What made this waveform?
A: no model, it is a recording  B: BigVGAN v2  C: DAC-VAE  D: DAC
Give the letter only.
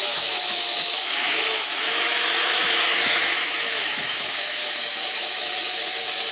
C